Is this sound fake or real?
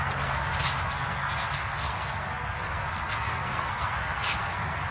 fake